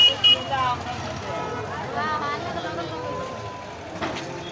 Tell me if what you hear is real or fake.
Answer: real